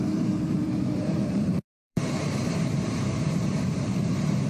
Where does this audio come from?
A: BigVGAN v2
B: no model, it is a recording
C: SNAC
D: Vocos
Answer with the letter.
A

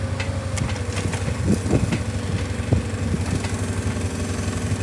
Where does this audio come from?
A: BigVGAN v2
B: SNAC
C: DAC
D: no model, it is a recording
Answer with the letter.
D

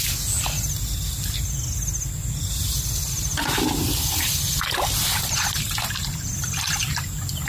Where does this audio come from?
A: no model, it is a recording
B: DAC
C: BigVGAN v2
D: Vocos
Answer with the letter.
A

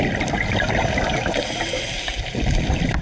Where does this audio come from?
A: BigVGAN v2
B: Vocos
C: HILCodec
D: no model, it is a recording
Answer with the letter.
A